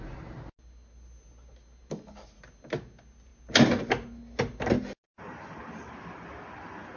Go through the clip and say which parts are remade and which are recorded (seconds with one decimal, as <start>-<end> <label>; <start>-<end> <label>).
0.0-7.0 recorded